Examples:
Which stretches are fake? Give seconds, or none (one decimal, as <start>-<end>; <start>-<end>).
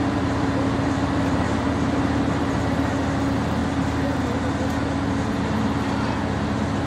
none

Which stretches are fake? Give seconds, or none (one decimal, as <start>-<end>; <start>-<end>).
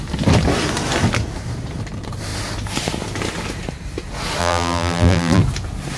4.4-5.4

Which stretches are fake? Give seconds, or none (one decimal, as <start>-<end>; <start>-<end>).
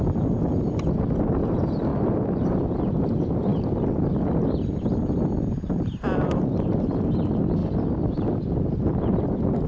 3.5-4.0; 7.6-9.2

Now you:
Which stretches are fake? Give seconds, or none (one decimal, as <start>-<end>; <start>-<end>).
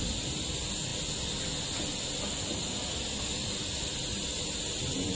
none